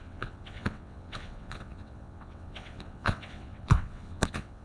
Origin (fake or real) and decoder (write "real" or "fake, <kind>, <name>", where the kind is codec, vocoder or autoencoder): fake, vocoder, WaveNeXt